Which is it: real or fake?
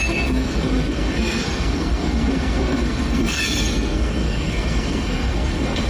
fake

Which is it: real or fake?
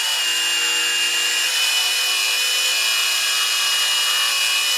real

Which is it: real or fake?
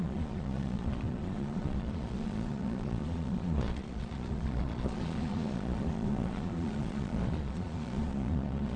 fake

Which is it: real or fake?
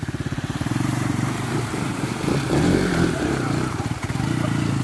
fake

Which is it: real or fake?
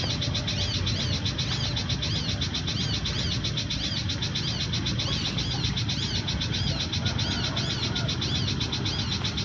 real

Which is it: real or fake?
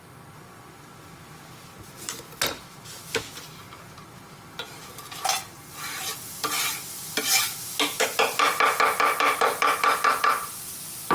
real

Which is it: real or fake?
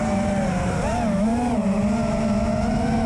real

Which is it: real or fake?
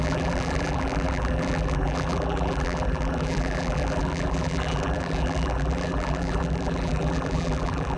fake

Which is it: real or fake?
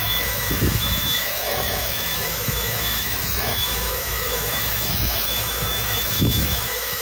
fake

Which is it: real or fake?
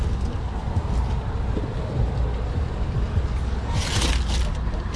real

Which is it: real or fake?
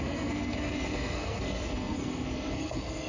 fake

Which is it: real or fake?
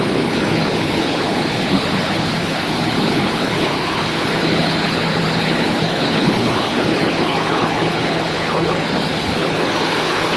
fake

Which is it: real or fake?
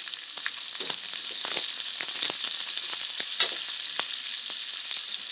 real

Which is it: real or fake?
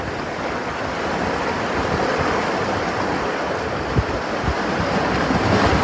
real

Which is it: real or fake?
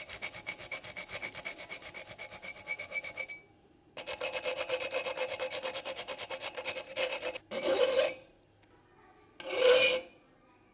real